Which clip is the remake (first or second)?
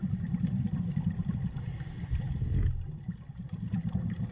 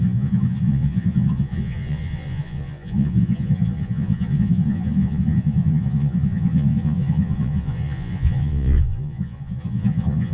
second